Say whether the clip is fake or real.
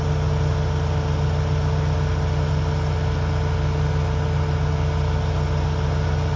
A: real